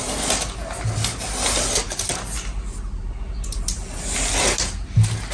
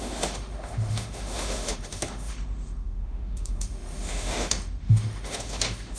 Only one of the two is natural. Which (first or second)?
first